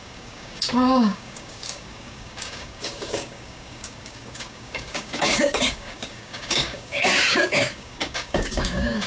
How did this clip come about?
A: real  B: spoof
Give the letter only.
B